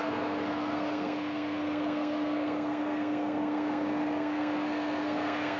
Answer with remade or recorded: remade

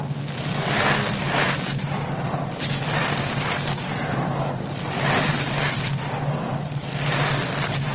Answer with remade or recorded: recorded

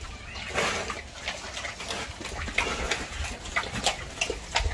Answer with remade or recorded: recorded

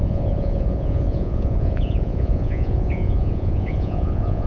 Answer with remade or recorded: remade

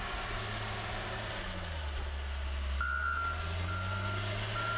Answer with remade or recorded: recorded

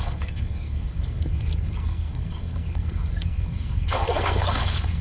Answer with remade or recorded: remade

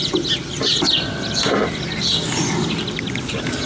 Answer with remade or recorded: recorded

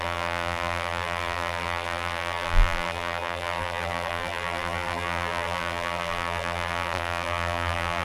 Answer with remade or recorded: remade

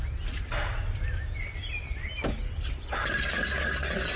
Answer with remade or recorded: recorded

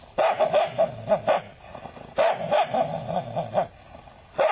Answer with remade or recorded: recorded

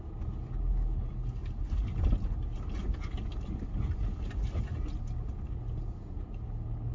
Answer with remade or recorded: recorded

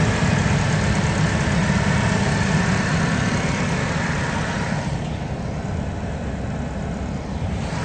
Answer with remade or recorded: recorded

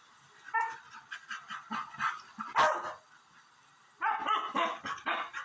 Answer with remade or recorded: recorded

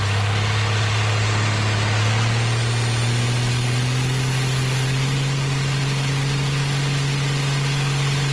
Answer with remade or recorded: recorded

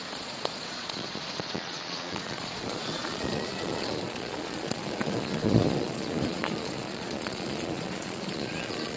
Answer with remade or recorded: remade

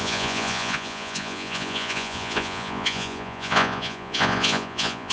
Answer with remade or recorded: remade